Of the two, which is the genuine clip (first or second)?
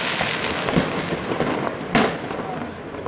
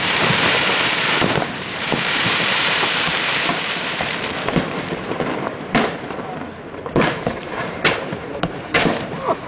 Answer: first